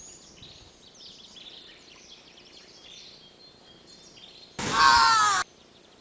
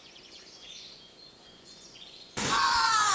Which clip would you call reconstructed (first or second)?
second